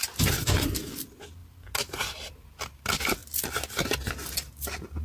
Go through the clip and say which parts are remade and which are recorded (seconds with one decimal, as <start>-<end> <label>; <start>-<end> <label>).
0.0-5.0 recorded